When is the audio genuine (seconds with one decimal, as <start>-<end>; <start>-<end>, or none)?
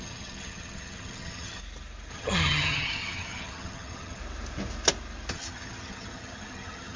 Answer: 1.6-2.1; 4.2-5.3